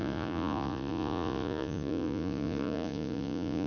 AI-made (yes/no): yes